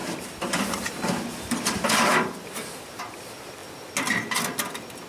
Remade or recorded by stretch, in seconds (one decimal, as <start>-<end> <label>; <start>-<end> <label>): 0.0-1.2 recorded; 1.2-3.6 remade; 3.6-5.1 recorded

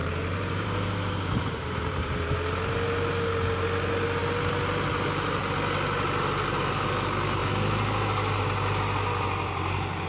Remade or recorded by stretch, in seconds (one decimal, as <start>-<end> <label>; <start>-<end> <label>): 0.0-2.3 remade; 2.3-10.1 recorded

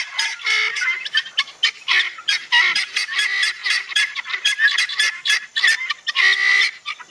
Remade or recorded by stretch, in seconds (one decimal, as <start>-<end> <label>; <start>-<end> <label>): 0.0-7.1 recorded

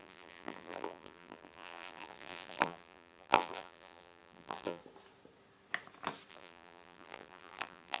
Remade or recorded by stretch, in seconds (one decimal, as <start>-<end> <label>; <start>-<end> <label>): 0.0-4.8 remade; 4.8-6.3 recorded; 6.3-8.0 remade

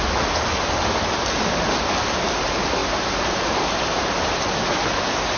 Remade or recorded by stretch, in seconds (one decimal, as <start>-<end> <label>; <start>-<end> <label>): 0.0-2.8 recorded; 2.8-4.4 remade; 4.4-5.4 recorded

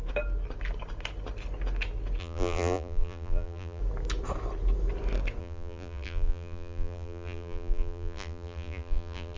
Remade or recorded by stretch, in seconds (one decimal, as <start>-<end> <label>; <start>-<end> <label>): 0.0-2.2 recorded; 2.2-3.8 remade; 3.8-5.4 recorded; 5.4-9.4 remade

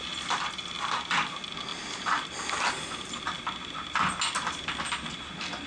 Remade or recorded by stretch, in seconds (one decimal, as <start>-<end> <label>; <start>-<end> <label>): 0.0-1.7 recorded; 1.7-2.7 remade; 2.7-5.7 recorded

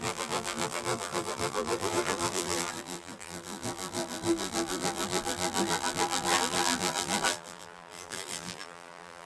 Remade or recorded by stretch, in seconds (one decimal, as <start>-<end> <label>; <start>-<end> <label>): 0.0-9.3 remade